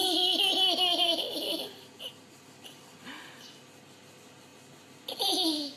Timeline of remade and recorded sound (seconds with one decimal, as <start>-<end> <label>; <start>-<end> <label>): 0.0-5.8 recorded